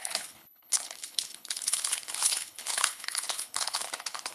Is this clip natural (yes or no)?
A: no